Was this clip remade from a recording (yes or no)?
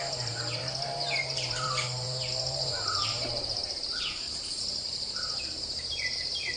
yes